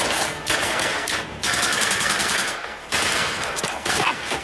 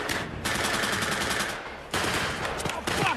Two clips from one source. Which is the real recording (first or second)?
second